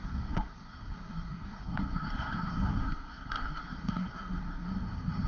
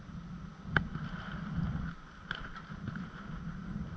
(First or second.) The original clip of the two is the second